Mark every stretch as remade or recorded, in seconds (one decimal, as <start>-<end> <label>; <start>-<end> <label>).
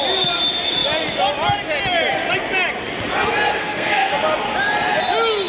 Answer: 0.0-3.5 recorded; 3.5-4.1 remade; 4.1-5.5 recorded